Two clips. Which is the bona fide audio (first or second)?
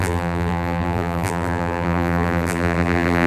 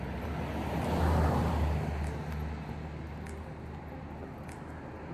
second